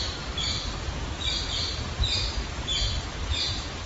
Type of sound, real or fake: fake